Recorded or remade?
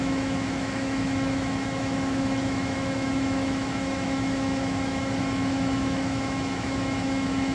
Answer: remade